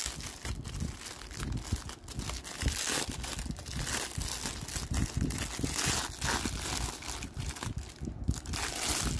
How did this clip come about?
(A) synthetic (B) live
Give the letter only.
B